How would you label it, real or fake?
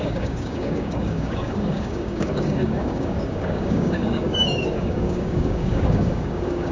fake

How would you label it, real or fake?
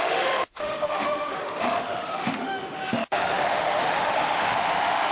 fake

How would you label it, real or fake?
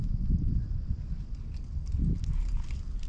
real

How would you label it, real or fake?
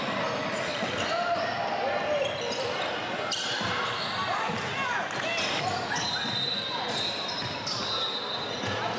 real